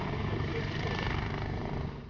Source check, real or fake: fake